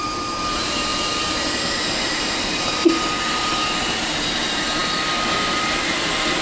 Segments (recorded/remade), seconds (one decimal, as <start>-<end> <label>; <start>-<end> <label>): 0.0-3.5 remade; 3.5-4.0 recorded; 4.0-6.4 remade